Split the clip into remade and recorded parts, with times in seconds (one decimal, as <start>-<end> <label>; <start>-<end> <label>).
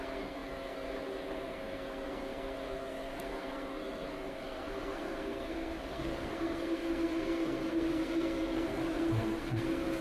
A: 0.0-10.0 remade